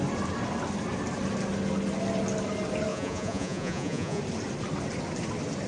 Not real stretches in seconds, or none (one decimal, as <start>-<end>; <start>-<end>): 2.9-4.2

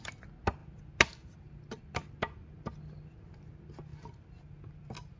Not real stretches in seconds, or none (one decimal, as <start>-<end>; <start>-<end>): none